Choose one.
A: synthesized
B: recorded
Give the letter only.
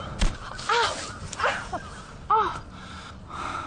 B